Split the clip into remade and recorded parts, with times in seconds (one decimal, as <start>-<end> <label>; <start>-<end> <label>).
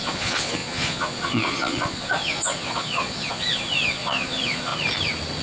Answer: 0.0-4.7 remade; 4.7-5.4 recorded